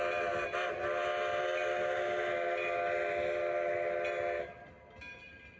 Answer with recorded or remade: recorded